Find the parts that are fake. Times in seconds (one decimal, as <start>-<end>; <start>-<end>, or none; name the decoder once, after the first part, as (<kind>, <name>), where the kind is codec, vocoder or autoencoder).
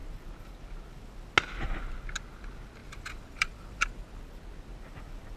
2.8-4.2 (vocoder, BigVGAN v2)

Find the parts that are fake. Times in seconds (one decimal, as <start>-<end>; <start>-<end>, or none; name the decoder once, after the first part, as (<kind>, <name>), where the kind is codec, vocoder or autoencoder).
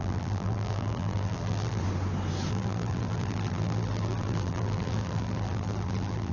0.0-1.8 (vocoder, BigVGAN v2); 2.5-6.3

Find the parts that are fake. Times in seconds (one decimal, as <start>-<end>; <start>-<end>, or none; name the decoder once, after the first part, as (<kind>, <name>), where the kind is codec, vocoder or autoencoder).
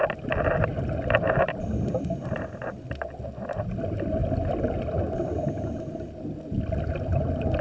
0.7-2.7 (vocoder, BigVGAN v2)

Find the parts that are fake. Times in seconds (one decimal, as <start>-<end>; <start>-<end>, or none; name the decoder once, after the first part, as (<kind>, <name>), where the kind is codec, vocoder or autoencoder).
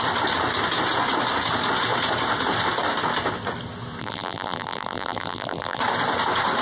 4.0-5.8 (vocoder, BigVGAN v2)